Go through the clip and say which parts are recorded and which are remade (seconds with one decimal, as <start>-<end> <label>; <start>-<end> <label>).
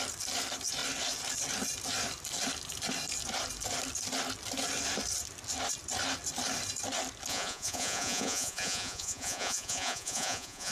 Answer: 0.0-7.3 recorded; 7.3-10.7 remade